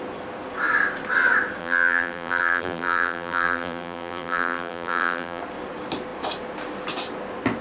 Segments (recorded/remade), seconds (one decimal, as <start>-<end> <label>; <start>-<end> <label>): 0.0-1.6 recorded; 1.6-5.4 remade; 5.4-7.6 recorded